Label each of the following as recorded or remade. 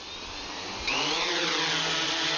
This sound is recorded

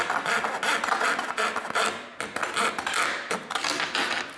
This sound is recorded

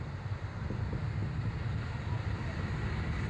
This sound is recorded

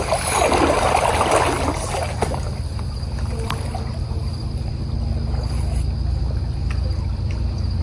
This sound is recorded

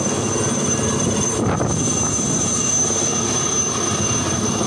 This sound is recorded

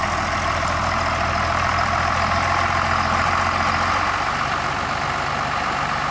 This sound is recorded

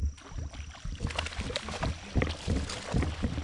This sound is recorded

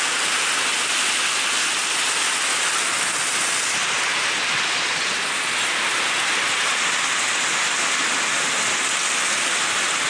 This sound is recorded